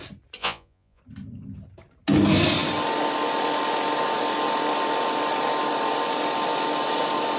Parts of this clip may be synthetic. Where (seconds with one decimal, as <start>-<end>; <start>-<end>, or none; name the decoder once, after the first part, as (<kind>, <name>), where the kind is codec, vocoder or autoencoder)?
0.4-1.0 (vocoder, Vocos)